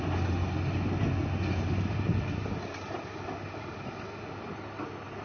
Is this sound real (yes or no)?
yes